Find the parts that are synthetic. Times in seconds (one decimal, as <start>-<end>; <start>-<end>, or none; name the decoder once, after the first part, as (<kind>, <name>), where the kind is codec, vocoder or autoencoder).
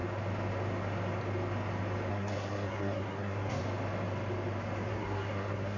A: 2.1-3.6 (codec, SNAC); 4.9-5.8